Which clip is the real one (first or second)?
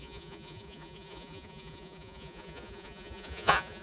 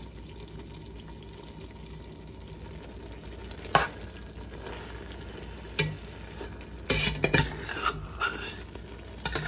second